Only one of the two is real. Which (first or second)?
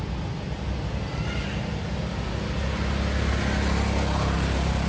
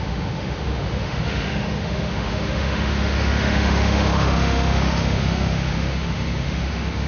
first